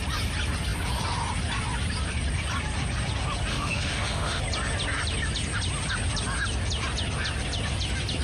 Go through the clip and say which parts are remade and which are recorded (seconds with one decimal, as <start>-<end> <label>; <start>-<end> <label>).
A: 0.0-3.5 recorded; 3.5-4.4 remade; 4.4-8.2 recorded